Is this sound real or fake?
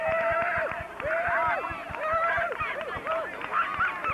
real